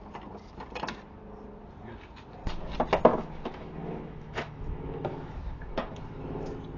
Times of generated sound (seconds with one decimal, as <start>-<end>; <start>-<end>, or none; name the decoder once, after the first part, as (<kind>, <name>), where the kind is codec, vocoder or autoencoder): 3.1-6.2 (autoencoder, DAC-VAE)